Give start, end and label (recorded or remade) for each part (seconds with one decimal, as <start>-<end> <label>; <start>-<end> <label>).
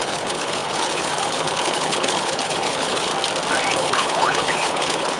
0.0-3.1 remade; 3.1-3.7 recorded; 3.7-5.2 remade